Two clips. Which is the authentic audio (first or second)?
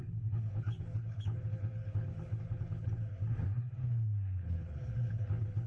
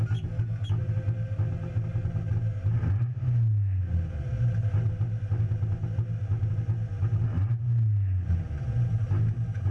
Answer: second